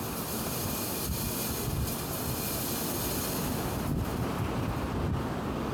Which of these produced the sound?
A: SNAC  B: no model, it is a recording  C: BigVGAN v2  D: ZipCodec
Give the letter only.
B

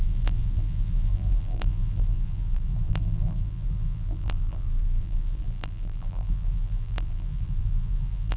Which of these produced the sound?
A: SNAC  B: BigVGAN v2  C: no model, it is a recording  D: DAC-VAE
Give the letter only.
B